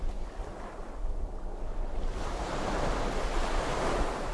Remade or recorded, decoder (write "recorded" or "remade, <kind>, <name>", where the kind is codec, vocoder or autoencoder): recorded